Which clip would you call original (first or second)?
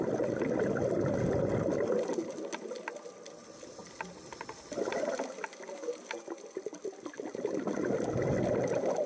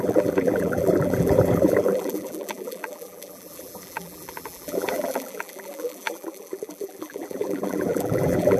first